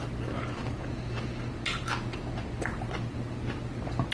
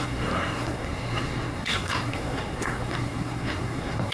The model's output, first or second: second